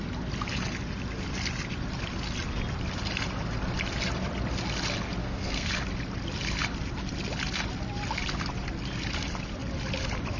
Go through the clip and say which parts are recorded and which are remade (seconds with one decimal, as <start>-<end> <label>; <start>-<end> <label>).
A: 0.0-5.2 recorded; 5.2-5.7 remade; 5.7-10.4 recorded